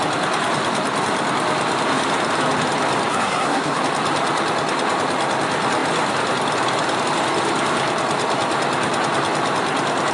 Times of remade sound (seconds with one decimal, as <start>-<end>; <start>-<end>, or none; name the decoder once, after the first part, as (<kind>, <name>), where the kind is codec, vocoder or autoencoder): 3.1-3.8 (codec, SNAC)